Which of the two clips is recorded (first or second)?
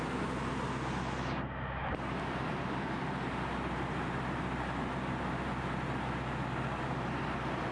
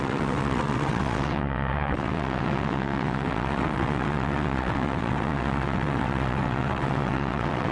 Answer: first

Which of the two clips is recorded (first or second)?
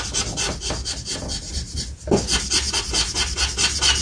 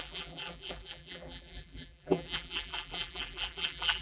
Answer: first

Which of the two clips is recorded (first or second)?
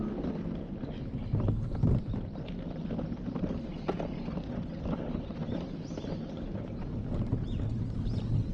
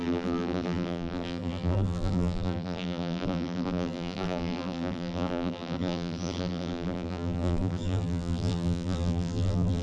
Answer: first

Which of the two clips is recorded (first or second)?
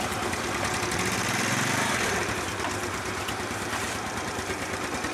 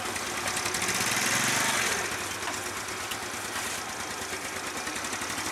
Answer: second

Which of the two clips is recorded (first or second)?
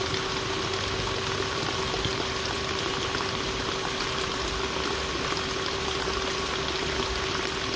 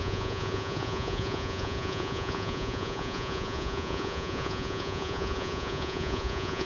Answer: first